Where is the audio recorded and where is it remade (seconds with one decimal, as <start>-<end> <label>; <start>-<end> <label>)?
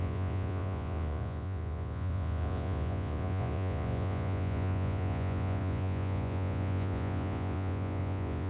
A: 0.0-8.5 remade